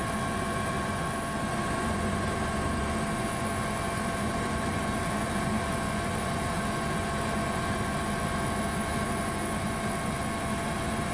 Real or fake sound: fake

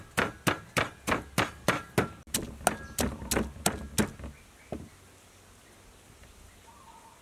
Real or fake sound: real